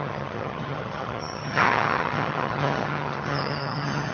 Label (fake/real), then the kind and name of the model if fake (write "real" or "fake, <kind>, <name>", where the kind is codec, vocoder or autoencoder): fake, vocoder, HiFi-GAN